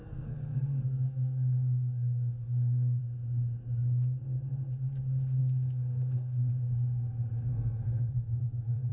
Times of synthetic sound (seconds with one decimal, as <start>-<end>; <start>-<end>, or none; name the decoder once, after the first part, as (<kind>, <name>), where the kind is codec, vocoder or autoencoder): 0.0-3.0 (codec, SNAC); 5.4-6.5; 7.5-8.9